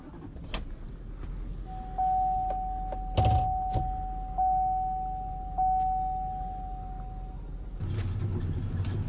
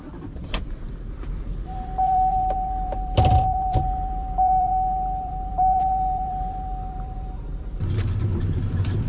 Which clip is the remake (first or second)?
second